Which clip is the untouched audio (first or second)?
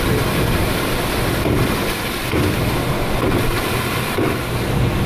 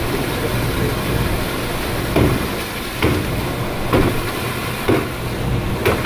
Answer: second